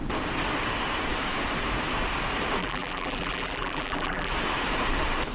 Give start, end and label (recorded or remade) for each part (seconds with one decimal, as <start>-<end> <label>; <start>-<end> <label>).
0.0-2.6 recorded; 2.6-4.3 remade; 4.3-5.3 recorded